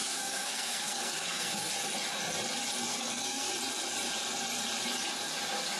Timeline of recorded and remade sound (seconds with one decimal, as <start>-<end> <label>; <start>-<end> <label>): 0.0-1.7 remade; 1.7-2.9 recorded; 2.9-3.5 remade; 3.5-5.8 recorded